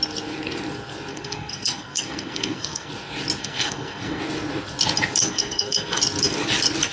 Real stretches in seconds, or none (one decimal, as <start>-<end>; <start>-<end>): 0.0-1.1; 2.9-3.4; 4.2-5.3; 6.0-6.9